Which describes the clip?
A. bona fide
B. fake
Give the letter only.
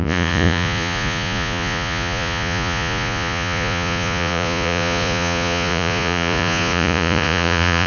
B